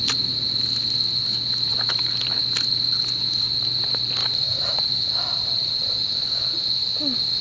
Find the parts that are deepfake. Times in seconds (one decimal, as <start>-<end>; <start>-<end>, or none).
4.2-4.8